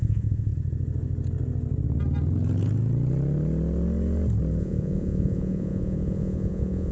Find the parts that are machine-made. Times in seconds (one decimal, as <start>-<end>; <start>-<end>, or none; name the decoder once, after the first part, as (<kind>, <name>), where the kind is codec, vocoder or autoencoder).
0.0-0.5 (vocoder, Vocos); 4.6-6.9